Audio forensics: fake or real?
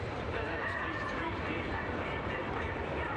fake